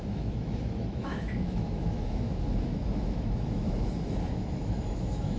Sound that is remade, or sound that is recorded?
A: remade